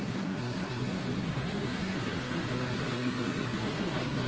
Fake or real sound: fake